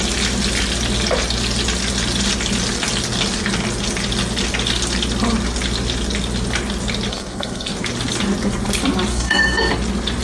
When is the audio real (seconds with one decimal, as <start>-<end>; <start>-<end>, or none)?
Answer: 0.0-7.1; 7.7-9.1; 9.7-10.2